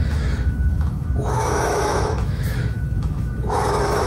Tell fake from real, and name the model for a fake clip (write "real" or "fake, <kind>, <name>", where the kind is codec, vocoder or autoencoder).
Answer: fake, autoencoder, DAC-VAE